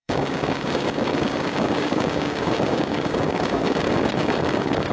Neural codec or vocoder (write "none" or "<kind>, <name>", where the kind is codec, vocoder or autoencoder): codec, DAC